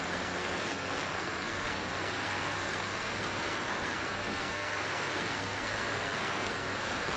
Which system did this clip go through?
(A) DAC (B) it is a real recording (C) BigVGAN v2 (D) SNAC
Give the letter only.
D